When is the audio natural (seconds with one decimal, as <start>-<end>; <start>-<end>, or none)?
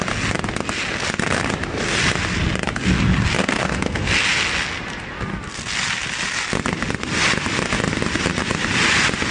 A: 0.0-3.4; 4.1-9.3